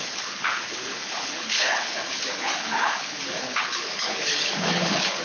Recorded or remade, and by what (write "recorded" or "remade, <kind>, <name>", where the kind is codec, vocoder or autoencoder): remade, codec, HILCodec